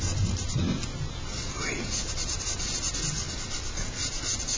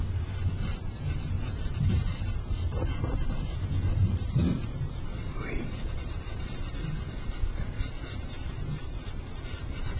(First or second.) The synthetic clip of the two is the second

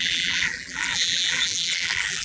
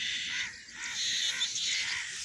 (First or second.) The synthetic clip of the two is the first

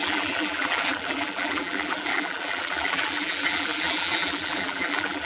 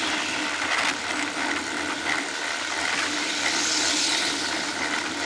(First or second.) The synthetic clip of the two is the first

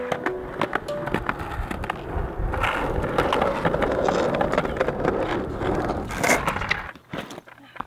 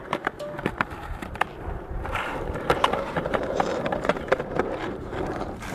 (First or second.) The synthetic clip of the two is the second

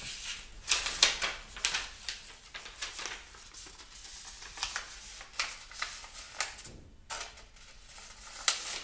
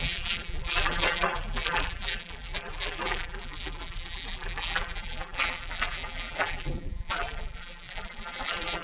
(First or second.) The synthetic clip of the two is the second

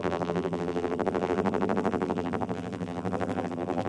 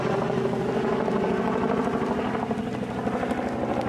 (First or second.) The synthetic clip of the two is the first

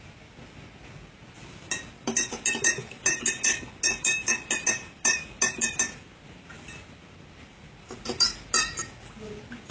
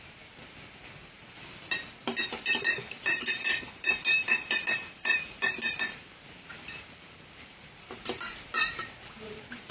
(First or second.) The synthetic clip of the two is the second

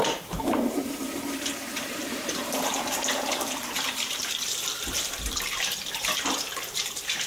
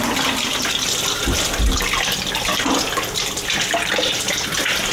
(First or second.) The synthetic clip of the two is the first